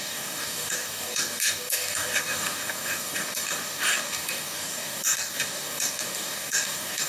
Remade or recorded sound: remade